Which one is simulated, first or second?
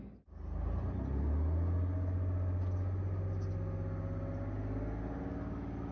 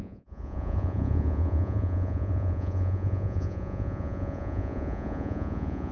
second